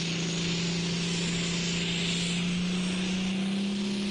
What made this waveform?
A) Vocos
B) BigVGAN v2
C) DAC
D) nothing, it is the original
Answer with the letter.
D